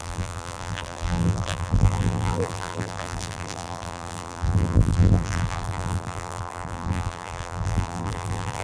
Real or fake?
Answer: fake